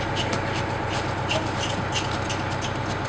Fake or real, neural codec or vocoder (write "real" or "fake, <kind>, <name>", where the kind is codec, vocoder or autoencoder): real